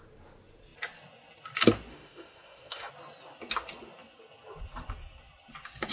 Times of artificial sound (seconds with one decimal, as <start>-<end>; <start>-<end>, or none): 1.9-2.9